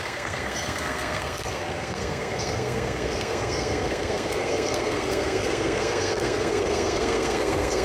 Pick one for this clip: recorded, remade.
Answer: remade